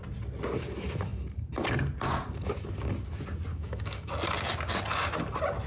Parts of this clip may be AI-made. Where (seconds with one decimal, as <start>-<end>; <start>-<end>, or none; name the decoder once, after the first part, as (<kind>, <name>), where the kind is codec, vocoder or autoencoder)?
3.5-4.1 (autoencoder, DAC-VAE)

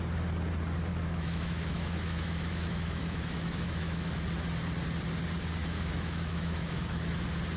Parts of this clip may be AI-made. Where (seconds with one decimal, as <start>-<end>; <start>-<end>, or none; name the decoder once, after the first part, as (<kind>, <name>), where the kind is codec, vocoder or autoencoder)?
0.9-4.2 (autoencoder, DAC-VAE); 5.6-7.1

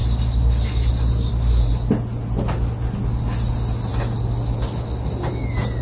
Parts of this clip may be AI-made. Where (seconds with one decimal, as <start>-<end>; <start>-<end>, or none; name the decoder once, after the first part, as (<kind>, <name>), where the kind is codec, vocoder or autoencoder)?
none

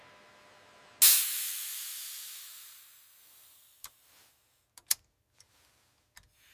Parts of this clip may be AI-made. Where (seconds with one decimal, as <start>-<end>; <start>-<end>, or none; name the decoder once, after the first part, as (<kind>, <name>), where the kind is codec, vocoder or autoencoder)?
none

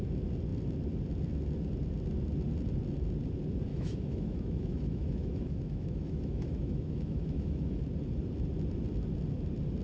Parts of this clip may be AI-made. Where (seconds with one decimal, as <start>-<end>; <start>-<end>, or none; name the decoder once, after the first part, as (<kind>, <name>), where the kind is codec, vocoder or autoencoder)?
3.7-7.8 (autoencoder, DAC-VAE)